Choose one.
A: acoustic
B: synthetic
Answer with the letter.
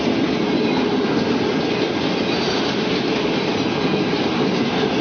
A